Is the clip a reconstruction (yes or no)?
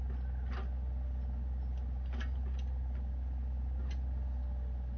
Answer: no